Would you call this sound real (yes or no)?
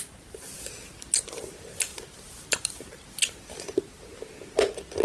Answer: yes